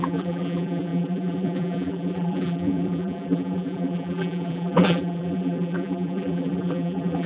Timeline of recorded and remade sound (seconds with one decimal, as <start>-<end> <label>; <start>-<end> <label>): 0.0-7.3 remade